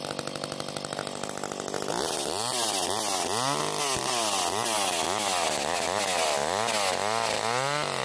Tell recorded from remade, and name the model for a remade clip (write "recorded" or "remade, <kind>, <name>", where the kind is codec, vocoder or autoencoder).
recorded